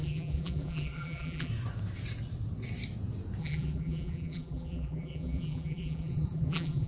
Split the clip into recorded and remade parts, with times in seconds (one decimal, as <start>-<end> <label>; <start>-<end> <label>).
0.0-1.5 remade; 1.5-3.4 recorded; 3.4-6.9 remade